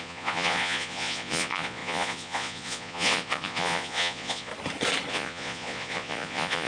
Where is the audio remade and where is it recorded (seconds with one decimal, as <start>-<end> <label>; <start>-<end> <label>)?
0.0-4.5 remade; 4.5-5.1 recorded; 5.1-6.7 remade